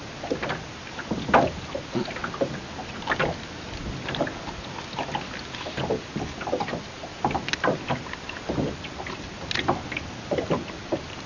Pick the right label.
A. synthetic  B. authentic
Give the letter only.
B